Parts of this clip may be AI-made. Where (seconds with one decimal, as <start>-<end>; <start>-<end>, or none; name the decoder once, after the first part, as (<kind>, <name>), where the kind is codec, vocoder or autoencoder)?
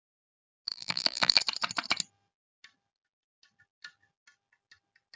0.7-1.4 (vocoder, BigVGAN v2)